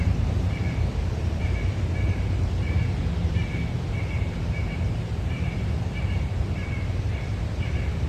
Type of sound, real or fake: fake